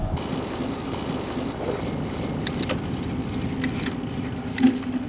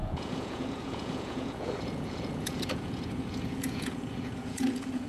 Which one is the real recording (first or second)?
first